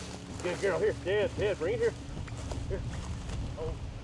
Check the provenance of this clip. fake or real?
real